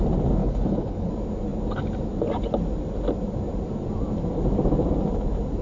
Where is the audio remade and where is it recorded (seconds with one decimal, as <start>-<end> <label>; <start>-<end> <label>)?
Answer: 0.0-0.4 recorded; 0.4-1.1 remade; 1.1-5.6 recorded